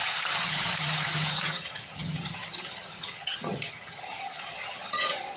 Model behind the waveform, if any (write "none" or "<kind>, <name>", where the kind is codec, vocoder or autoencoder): vocoder, HiFi-GAN